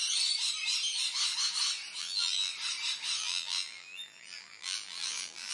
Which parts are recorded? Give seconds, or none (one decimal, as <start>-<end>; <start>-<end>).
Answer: 0.0-2.0; 2.5-3.2

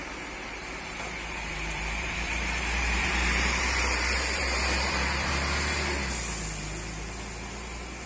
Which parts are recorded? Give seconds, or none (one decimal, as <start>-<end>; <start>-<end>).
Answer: 0.0-0.4; 5.3-8.1

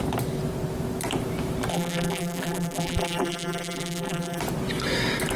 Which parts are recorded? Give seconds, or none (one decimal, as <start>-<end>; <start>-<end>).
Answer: 0.0-1.7; 4.4-5.4

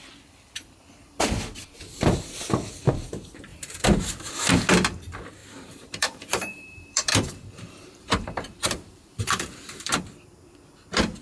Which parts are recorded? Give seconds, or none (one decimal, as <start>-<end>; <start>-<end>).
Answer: 0.0-3.5; 4.1-5.4; 9.9-11.2

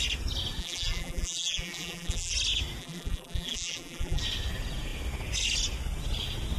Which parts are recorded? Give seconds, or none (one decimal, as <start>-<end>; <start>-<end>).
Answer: 0.0-0.6; 2.3-2.8; 4.2-6.6

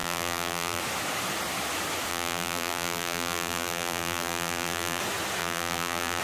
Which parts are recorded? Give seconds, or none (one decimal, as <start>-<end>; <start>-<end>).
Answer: 0.8-2.1; 5.0-5.4